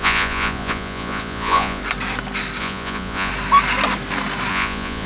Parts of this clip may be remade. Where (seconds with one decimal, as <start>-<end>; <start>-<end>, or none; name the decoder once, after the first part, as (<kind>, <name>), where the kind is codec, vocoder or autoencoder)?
0.0-1.8 (vocoder, Vocos); 2.6-3.3; 4.5-5.1